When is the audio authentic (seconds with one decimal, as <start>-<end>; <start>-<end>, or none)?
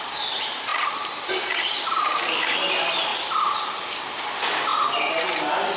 0.0-3.1; 3.8-5.8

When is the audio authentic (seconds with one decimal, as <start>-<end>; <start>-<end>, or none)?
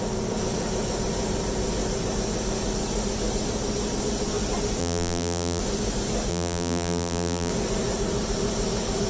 0.0-4.8; 5.6-6.3; 7.5-9.1